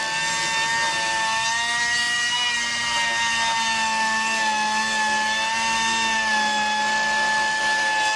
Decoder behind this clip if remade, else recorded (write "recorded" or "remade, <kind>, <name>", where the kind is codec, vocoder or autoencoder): recorded